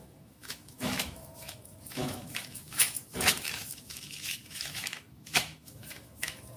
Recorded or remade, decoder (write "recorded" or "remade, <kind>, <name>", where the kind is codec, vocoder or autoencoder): remade, autoencoder, DAC-VAE